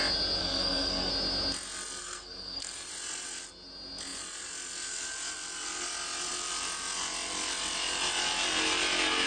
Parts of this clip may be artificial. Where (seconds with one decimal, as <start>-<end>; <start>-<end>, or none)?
0.4-1.1; 2.0-2.9